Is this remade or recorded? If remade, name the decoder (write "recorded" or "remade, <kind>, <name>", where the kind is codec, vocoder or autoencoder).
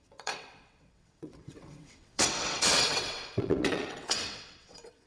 remade, vocoder, WaveNeXt